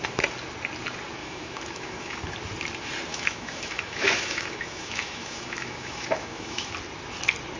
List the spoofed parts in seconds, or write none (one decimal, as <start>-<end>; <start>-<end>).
1.2-2.2; 3.1-6.7